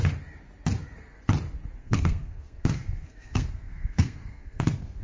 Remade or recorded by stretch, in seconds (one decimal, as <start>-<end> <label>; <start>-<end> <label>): 0.0-1.8 recorded; 1.8-5.0 remade